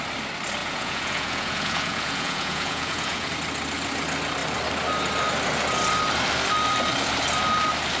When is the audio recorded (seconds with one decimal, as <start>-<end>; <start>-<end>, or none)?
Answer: 0.0-0.6; 3.3-8.0